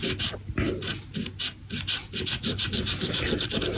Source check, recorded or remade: recorded